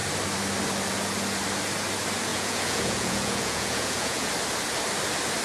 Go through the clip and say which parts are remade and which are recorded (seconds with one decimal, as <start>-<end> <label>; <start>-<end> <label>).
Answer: 0.0-2.3 recorded; 2.3-4.3 remade; 4.3-5.4 recorded